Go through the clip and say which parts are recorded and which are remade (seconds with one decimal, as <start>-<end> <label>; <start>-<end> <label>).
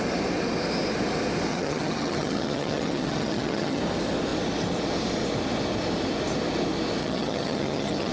0.0-1.5 recorded; 1.5-3.8 remade; 3.8-7.0 recorded; 7.0-8.1 remade